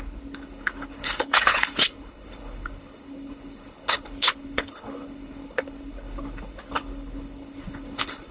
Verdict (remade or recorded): remade